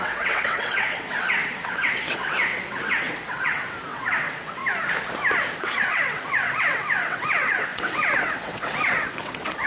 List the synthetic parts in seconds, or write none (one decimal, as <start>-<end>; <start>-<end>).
0.0-4.6; 5.6-9.7

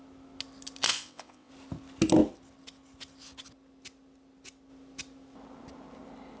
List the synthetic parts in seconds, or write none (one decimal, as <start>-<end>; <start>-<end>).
0.9-1.5

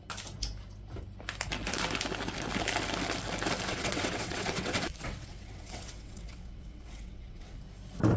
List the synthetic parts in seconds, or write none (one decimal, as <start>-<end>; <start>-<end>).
3.7-7.6

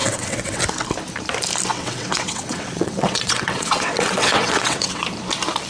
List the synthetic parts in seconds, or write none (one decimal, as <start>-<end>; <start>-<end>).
0.0-0.6; 1.7-5.0

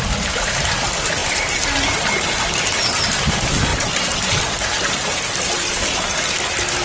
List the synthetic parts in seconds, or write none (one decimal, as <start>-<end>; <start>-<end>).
none

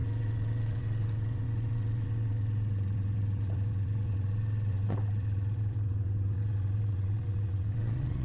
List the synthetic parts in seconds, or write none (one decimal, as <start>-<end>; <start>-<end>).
0.0-8.2